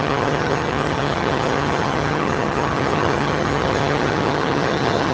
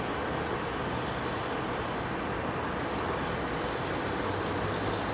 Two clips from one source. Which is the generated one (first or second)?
first